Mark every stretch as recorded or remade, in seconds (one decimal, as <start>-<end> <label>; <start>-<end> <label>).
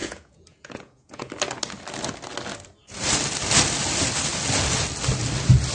0.0-1.3 remade; 1.3-5.7 recorded